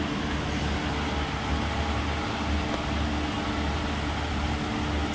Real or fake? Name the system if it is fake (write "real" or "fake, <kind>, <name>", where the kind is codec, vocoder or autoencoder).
real